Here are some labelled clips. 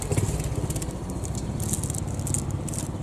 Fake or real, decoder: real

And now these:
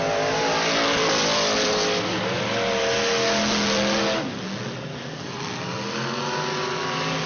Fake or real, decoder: real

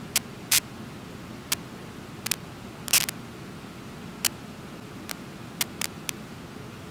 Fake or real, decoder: real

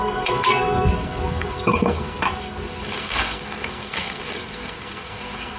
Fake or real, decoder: fake, codec, SNAC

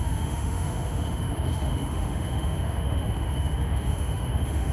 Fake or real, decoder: fake, autoencoder, DAC-VAE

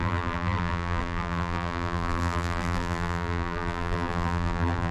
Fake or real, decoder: fake, vocoder, BigVGAN v2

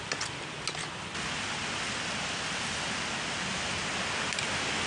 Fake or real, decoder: real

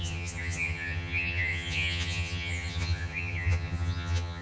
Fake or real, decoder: fake, vocoder, HiFi-GAN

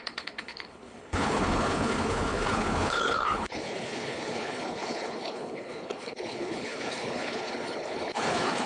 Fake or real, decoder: fake, codec, HILCodec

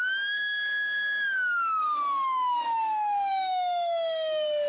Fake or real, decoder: fake, codec, DAC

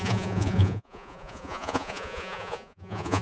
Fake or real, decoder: fake, vocoder, Vocos